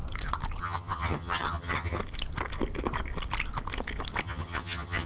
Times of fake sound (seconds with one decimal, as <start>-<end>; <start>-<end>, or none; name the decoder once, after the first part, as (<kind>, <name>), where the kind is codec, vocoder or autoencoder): 0.6-2.0 (vocoder, HiFi-GAN); 4.2-5.1